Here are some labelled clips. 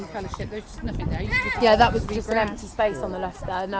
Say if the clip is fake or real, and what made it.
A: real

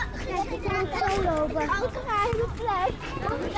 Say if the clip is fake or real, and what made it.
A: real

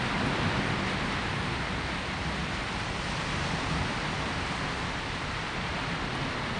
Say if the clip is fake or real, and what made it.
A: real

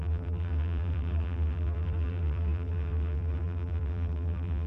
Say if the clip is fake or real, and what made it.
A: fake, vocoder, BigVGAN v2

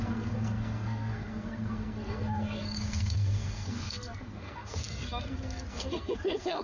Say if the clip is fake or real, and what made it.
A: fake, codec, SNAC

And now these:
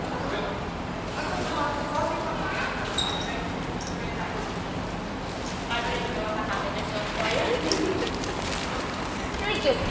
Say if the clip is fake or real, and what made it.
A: real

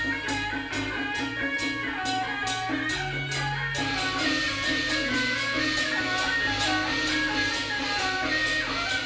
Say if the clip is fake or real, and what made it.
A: real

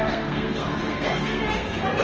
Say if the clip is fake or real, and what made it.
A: fake, codec, SNAC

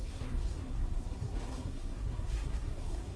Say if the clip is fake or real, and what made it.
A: fake, codec, SNAC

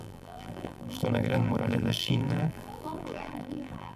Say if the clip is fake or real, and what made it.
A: fake, vocoder, BigVGAN v2